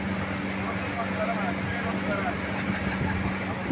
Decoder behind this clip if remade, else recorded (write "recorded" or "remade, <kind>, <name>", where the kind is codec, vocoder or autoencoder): recorded